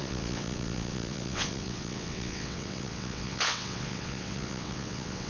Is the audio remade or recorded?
remade